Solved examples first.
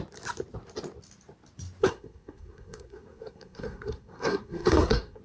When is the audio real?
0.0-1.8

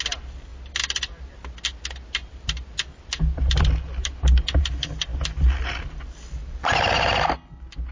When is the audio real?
0.0-7.9

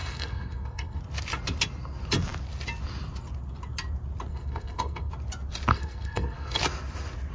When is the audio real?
1.0-4.3; 5.1-5.7; 6.6-7.3